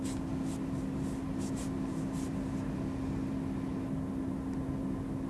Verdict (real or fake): real